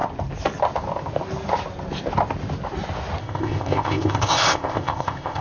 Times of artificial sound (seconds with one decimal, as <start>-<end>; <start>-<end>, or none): 3.2-5.4